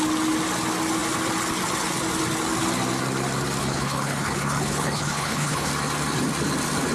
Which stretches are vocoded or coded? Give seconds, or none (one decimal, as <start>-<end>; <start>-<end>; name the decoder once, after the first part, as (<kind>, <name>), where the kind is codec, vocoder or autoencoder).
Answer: 3.6-5.7 (codec, HILCodec)